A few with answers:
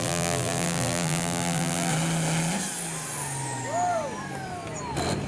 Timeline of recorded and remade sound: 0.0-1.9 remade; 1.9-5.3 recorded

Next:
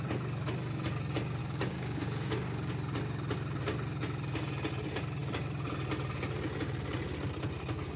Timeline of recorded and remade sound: 0.0-1.4 recorded; 1.4-2.7 remade; 2.7-8.0 recorded

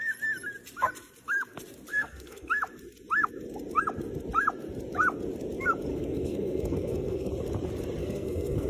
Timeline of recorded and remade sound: 0.0-1.9 recorded; 1.9-2.5 remade; 2.5-5.9 recorded; 5.9-7.3 remade; 7.3-8.0 recorded; 8.0-8.7 remade

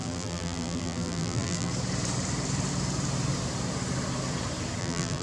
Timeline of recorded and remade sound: 0.0-1.7 remade; 1.7-4.8 recorded; 4.8-5.2 remade

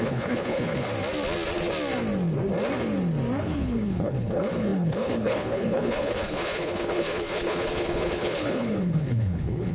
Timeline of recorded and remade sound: 0.0-0.9 remade; 0.9-3.4 recorded; 3.4-9.7 remade

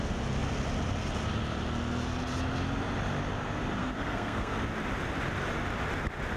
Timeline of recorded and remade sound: 0.0-3.8 recorded; 3.8-4.6 remade; 4.6-6.4 recorded

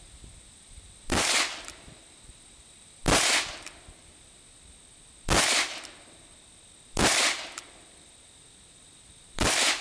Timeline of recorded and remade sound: 0.0-3.0 remade; 3.0-7.2 recorded; 7.2-9.8 remade